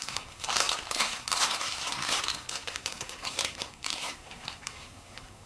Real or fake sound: fake